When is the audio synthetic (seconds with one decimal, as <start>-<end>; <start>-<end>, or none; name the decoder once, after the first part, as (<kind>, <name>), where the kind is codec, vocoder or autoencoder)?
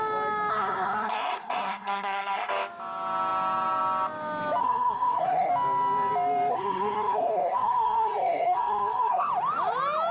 0.5-2.5 (codec, SNAC); 4.6-5.5; 6.5-9.3